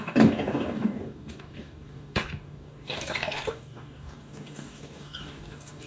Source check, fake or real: fake